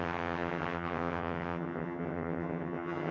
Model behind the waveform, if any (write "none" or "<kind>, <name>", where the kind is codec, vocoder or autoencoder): vocoder, HiFi-GAN